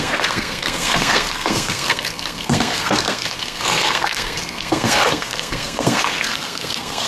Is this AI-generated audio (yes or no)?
yes